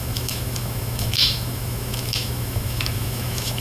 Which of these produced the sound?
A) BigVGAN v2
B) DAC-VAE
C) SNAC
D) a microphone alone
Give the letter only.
B